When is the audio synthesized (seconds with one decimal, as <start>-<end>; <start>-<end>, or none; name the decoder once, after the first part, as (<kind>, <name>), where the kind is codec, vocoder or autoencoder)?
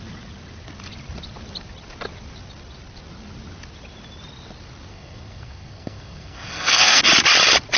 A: 4.9-7.0 (codec, SNAC)